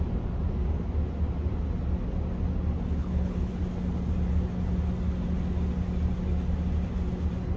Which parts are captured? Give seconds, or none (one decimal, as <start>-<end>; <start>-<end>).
0.0-3.0; 3.5-7.6